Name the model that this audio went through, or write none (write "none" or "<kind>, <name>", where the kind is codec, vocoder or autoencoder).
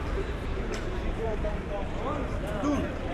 vocoder, BigVGAN v2